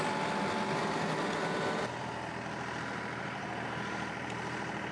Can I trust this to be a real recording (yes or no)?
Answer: yes